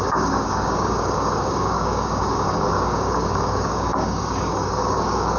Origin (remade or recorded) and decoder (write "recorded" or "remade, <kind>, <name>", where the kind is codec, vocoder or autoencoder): remade, codec, DAC